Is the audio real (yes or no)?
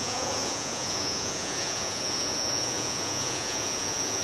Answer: no